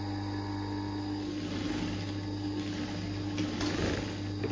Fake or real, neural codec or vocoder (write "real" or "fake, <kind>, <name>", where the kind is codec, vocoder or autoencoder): real